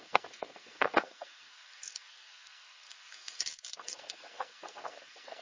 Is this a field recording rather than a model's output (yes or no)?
no